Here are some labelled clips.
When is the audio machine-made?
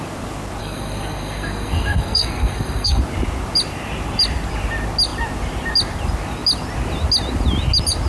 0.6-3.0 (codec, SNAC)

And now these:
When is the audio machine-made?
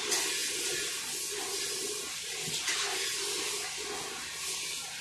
none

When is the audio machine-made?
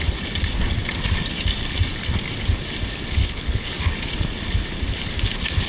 3.2-3.7 (codec, HILCodec)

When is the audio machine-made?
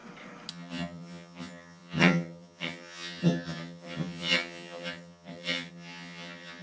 0.5-6.6 (vocoder, HiFi-GAN)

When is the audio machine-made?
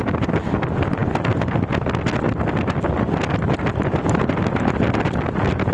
none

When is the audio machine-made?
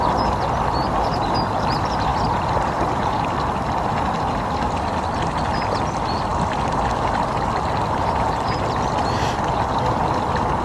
none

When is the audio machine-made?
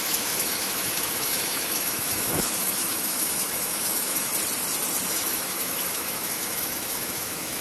0.0-4.3 (autoencoder, DAC-VAE); 5.1-7.6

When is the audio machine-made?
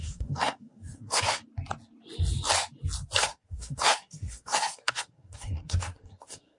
0.0-1.4 (codec, SNAC); 3.2-6.6